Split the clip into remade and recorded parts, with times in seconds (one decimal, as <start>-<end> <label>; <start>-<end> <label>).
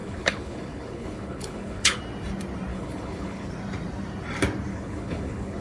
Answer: 0.0-2.0 remade; 2.0-2.7 recorded; 2.7-3.5 remade; 3.5-4.7 recorded; 4.7-5.6 remade